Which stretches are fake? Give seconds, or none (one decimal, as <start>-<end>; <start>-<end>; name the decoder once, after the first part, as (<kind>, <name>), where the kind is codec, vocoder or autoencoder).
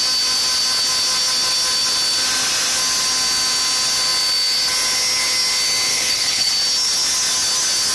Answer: 5.9-6.5 (codec, HILCodec)